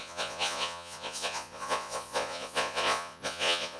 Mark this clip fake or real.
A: fake